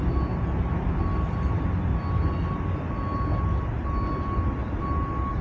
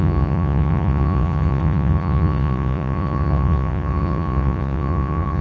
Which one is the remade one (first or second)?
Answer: second